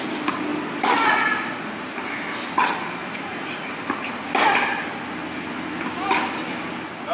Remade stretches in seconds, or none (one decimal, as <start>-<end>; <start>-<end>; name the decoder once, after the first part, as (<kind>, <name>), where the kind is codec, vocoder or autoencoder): 3.0-3.7 (vocoder, Vocos)